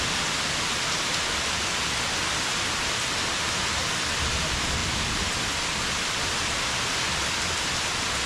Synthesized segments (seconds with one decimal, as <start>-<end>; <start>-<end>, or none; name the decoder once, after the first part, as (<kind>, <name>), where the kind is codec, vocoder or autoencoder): none